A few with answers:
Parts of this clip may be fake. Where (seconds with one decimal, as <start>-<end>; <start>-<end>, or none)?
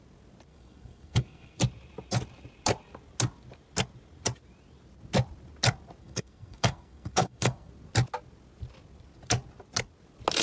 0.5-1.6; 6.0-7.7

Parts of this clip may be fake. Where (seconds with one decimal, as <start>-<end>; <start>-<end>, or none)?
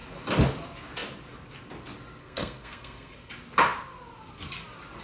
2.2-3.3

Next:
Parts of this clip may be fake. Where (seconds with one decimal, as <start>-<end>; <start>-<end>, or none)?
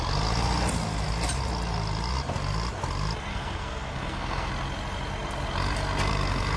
3.3-4.5